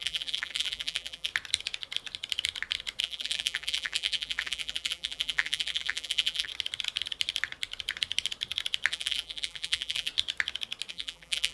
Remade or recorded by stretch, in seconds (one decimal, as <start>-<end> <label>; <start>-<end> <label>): 0.0-1.3 remade; 1.3-3.0 recorded; 3.0-6.5 remade; 6.5-8.9 recorded; 8.9-10.1 remade; 10.1-10.9 recorded; 10.9-11.5 remade